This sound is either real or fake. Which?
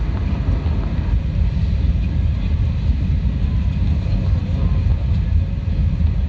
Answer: real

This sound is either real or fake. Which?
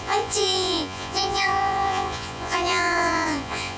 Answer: fake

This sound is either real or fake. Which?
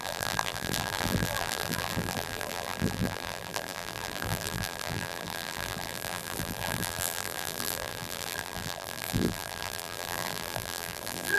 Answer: fake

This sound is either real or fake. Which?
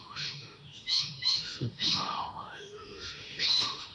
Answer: fake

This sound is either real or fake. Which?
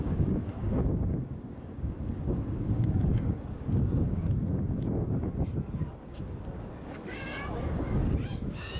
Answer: fake